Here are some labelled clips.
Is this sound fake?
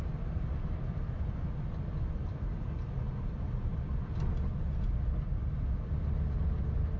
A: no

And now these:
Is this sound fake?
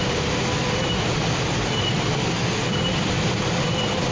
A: no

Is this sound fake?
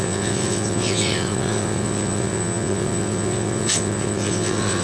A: yes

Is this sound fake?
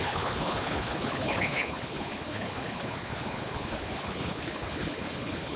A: yes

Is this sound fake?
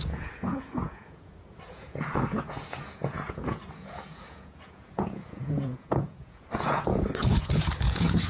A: yes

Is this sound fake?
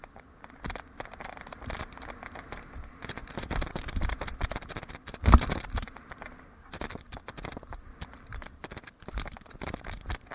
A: yes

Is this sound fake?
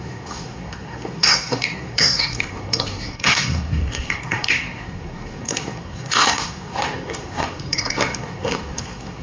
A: yes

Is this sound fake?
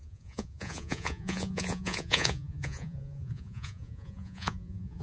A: yes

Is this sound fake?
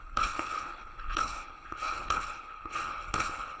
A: yes